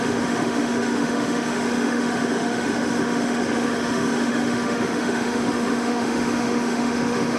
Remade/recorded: remade